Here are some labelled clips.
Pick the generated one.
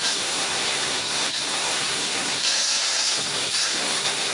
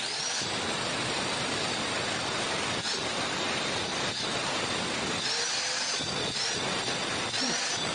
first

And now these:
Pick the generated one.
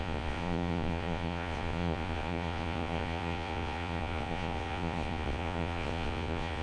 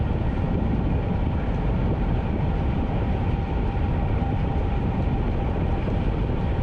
first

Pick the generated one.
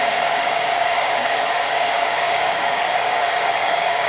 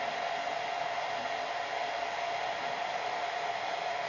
first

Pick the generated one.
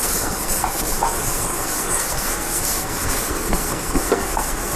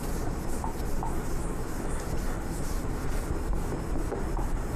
first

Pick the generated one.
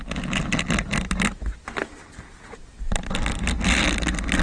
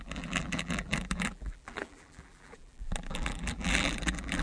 second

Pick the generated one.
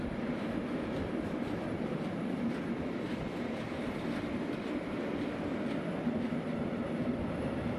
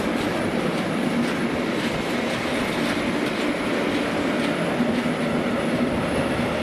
first